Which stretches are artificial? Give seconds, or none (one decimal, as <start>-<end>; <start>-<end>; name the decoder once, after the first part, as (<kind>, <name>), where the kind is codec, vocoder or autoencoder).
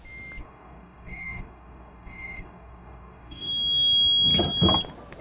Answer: 0.4-3.5 (codec, DAC)